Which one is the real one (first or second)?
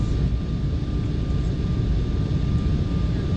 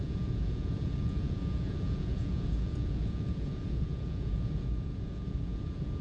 first